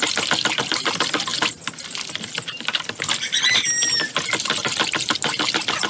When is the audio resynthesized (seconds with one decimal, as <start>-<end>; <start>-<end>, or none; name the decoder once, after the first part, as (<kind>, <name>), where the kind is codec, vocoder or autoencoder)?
none